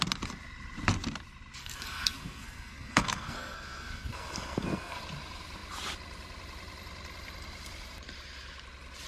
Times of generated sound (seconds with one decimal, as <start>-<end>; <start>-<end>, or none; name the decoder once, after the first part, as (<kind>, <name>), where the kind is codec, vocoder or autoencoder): 1.6-5.0 (codec, SNAC)